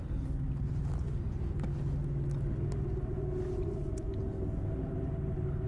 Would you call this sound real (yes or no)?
yes